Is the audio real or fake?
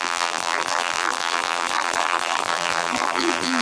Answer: fake